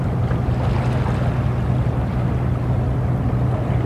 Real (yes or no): yes